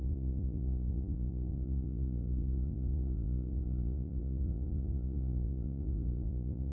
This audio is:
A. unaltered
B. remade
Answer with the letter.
B